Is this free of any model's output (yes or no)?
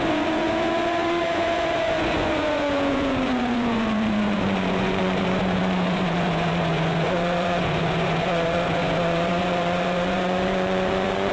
no